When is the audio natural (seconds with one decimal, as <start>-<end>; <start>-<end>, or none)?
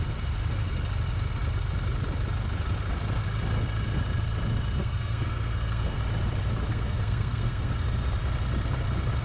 0.0-4.8; 6.0-6.7; 7.7-9.2